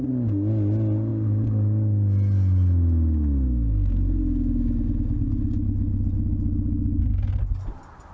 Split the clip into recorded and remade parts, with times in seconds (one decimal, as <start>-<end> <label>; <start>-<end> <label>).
0.0-8.1 recorded